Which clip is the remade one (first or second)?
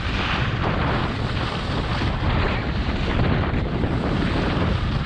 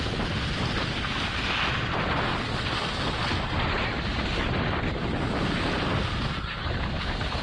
first